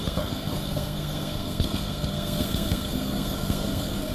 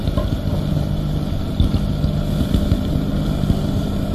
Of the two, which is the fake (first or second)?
first